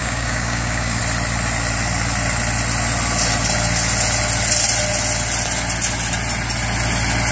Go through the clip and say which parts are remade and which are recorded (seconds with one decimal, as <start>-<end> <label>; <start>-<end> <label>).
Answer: 0.0-1.0 remade; 1.0-7.3 recorded